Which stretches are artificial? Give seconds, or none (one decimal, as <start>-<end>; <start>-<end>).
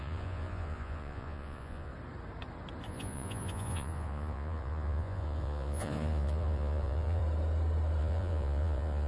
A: 0.0-1.9; 2.9-7.2; 8.0-9.1